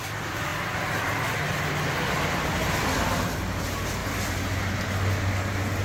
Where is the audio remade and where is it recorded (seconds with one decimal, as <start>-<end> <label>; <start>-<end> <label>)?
0.0-5.8 recorded